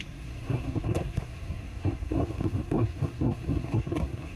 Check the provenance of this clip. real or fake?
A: fake